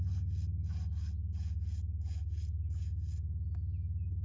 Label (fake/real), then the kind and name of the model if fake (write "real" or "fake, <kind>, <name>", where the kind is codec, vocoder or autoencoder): real